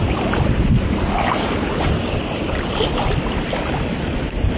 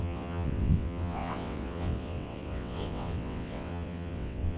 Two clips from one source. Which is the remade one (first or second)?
second